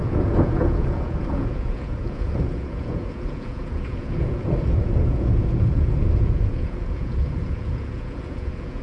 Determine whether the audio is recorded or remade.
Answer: remade